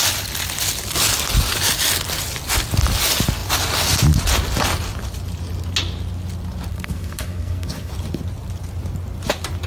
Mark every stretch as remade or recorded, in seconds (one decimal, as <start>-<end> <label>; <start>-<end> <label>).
0.0-6.7 recorded; 6.7-7.9 remade; 7.9-9.7 recorded